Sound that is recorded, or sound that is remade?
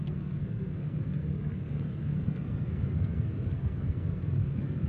remade